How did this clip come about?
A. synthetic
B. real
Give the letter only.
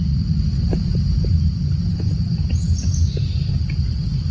B